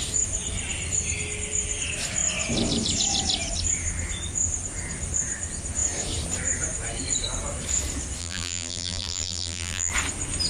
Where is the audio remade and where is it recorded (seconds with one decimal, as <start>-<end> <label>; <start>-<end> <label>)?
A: 0.0-8.2 recorded; 8.2-9.9 remade; 9.9-10.5 recorded